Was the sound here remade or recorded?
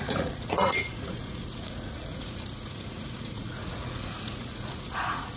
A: remade